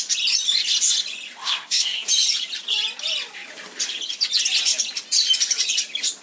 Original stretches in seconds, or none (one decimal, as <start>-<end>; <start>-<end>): 0.0-1.4; 2.1-6.2